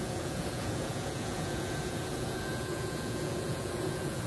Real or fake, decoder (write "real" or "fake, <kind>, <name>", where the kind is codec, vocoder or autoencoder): fake, vocoder, Vocos